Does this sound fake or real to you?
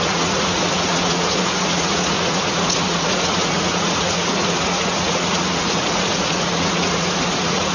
fake